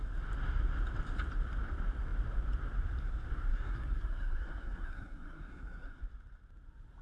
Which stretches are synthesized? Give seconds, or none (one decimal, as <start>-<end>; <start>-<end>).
3.5-6.0